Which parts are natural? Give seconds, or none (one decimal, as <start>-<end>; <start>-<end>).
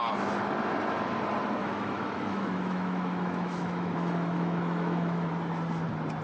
0.0-1.6; 5.3-6.2